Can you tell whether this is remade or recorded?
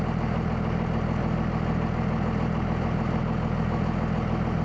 recorded